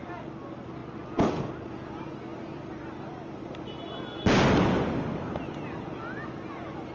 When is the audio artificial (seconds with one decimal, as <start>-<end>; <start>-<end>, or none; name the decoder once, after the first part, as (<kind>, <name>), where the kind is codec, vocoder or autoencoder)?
none